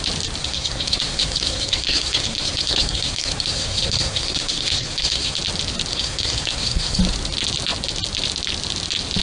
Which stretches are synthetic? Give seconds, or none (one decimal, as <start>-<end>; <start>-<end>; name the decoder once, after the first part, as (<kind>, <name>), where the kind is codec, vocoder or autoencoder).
0.4-5.4 (codec, SNAC); 5.9-7.0